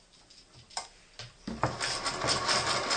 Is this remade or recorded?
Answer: recorded